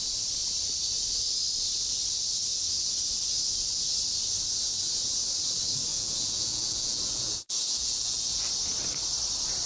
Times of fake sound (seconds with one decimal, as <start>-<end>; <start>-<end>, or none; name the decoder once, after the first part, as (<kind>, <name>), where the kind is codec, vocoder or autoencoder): 5.9-8.4 (vocoder, Vocos)